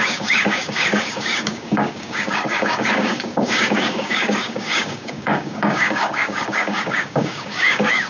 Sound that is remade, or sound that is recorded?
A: remade